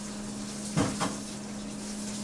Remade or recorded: recorded